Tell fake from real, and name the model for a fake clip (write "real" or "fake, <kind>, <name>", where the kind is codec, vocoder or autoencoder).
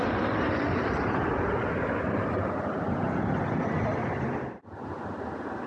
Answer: real